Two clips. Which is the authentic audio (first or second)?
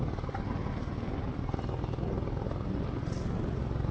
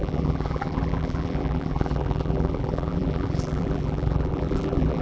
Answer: first